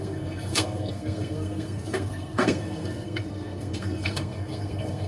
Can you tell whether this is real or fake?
fake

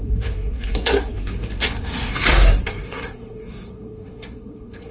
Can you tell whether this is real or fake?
fake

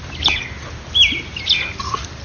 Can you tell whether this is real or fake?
real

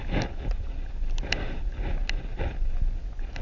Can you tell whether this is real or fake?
real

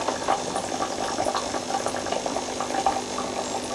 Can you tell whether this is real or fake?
real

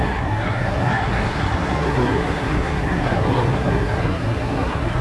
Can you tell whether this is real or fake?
fake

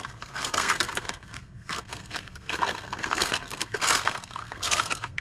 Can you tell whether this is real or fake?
fake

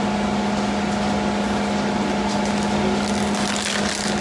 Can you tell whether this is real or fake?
real